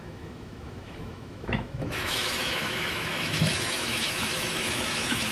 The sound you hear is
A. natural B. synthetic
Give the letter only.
B